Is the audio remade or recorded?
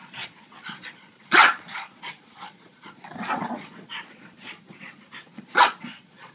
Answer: remade